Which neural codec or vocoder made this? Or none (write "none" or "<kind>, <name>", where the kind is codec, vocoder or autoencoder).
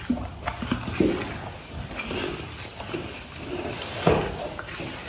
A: none